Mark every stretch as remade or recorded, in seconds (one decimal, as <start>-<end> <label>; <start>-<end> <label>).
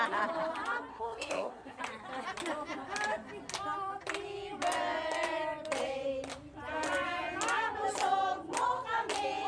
0.0-0.9 recorded; 0.9-1.8 remade; 1.8-9.5 recorded